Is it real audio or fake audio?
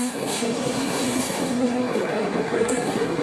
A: fake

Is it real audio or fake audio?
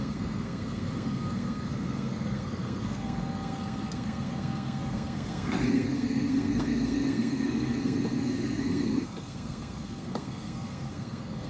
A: fake